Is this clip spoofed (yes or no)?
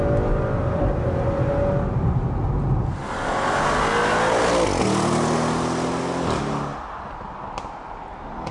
no